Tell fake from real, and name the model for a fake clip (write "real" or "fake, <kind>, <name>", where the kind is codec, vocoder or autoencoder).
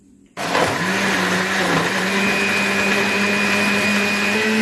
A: real